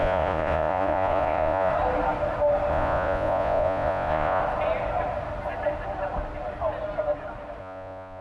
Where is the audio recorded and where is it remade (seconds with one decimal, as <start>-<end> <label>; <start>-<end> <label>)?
0.0-1.7 remade; 1.7-2.7 recorded; 2.7-4.4 remade; 4.4-7.6 recorded; 7.6-8.2 remade